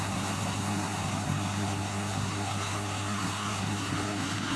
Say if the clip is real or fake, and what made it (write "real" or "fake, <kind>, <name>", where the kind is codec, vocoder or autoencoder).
fake, codec, SNAC